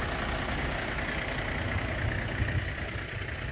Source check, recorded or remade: recorded